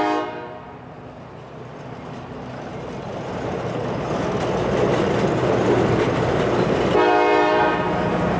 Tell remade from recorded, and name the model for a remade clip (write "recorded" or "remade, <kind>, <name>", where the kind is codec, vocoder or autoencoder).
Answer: recorded